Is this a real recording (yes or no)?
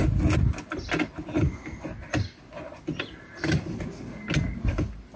yes